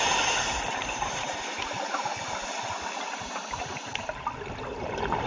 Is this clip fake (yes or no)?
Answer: no